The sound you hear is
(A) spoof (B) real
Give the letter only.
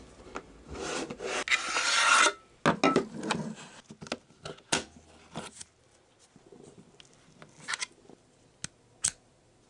B